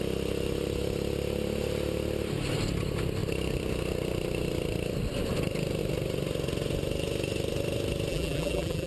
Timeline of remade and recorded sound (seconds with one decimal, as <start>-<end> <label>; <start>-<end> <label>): 0.0-8.1 recorded; 8.1-8.9 remade